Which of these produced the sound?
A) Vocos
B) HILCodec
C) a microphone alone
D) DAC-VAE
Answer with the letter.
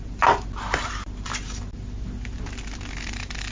C